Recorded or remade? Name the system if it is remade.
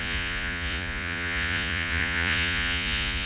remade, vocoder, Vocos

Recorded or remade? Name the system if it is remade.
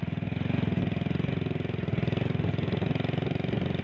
recorded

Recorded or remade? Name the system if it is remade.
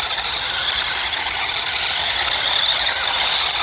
recorded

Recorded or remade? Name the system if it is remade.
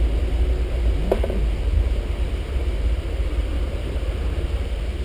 remade, vocoder, BigVGAN v2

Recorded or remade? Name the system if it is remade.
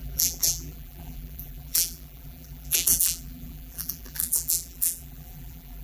remade, vocoder, BigVGAN v2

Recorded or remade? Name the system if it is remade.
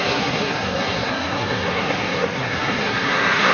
remade, codec, SNAC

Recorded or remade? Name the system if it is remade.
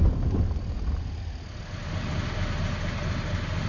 recorded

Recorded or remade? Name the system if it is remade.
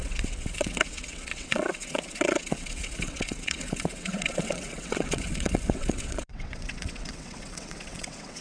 remade, vocoder, WaveNeXt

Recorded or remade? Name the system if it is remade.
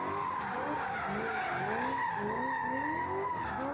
recorded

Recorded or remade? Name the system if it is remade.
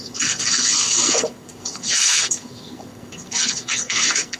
remade, codec, SNAC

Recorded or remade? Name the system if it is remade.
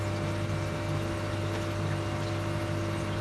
recorded